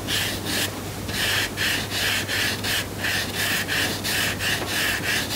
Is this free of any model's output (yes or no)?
yes